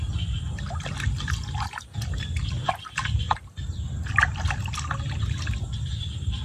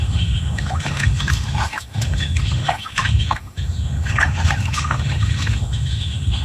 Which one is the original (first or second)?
first